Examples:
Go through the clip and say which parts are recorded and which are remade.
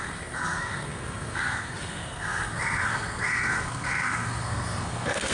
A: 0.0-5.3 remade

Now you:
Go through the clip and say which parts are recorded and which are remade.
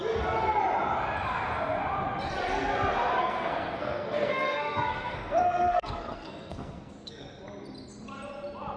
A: 0.0-3.2 recorded; 3.2-7.4 remade; 7.4-8.8 recorded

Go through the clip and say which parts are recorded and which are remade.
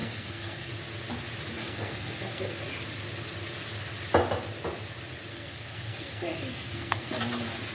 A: 0.0-0.7 remade; 0.7-1.6 recorded; 1.6-2.6 remade; 2.6-5.3 recorded; 5.3-7.2 remade; 7.2-7.7 recorded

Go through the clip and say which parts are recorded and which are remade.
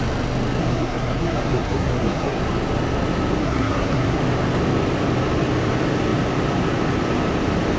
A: 0.0-0.6 recorded; 0.6-2.4 remade; 2.4-3.4 recorded; 3.4-4.2 remade; 4.2-7.8 recorded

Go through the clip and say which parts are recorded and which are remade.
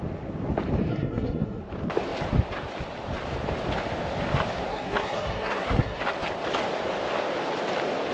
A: 0.0-0.9 recorded; 0.9-1.6 remade; 1.6-4.7 recorded; 4.7-6.0 remade; 6.0-8.1 recorded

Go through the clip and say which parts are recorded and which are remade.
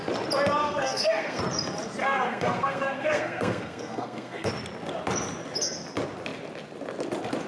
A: 0.0-0.6 recorded; 0.6-1.4 remade; 1.4-2.0 recorded; 2.0-4.5 remade; 4.5-7.5 recorded